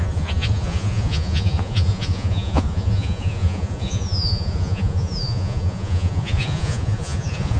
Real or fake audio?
fake